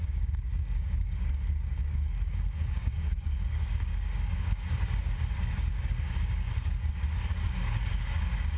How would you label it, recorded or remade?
remade